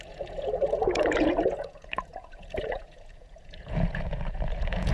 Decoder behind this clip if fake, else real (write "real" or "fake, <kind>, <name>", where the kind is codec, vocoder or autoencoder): fake, vocoder, Vocos